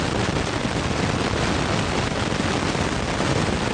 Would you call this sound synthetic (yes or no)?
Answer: no